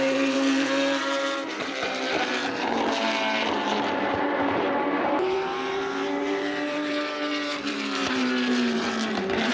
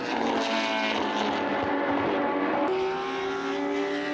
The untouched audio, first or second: second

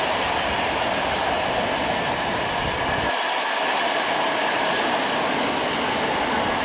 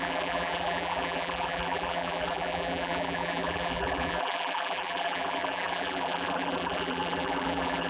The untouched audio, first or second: first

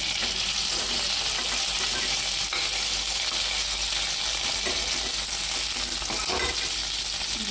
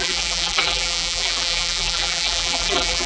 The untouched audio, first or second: first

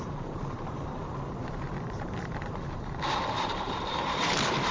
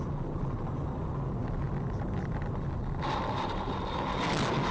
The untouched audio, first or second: second